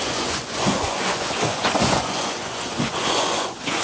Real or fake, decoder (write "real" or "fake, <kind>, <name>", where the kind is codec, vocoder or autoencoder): fake, vocoder, Vocos